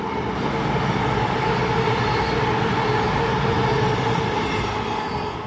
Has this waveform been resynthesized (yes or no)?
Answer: no